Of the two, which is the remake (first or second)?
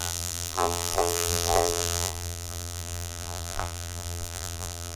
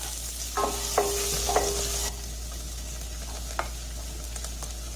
first